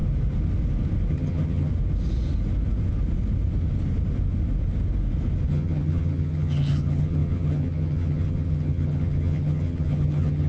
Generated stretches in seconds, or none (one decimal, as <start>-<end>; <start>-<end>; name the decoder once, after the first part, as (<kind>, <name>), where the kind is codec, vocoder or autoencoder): 1.1-1.7 (vocoder, HiFi-GAN); 5.5-10.5